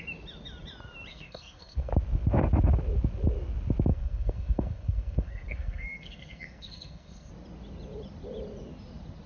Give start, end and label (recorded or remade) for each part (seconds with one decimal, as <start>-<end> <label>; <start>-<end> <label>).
0.0-1.1 recorded; 1.1-1.9 remade; 1.9-3.9 recorded; 3.9-7.3 remade; 7.3-9.3 recorded